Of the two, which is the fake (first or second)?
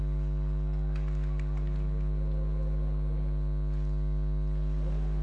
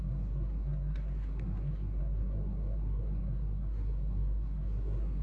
second